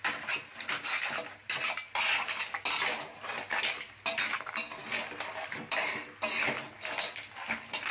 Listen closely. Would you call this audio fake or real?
real